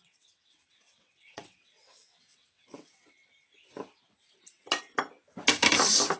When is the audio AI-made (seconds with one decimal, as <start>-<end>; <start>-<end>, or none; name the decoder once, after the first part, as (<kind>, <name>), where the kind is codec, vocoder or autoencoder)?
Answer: 0.0-3.2 (vocoder, WaveNeXt)